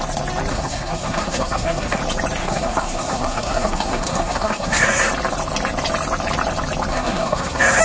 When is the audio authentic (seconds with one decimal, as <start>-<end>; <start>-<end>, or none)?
0.0-0.5; 2.0-2.4; 5.1-6.9